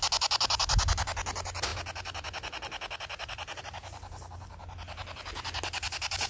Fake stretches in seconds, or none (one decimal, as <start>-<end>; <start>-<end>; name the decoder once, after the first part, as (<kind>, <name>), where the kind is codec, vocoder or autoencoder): none